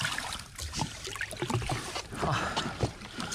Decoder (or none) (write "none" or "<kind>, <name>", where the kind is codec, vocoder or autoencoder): none